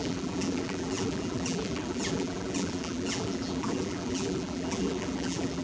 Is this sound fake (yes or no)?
yes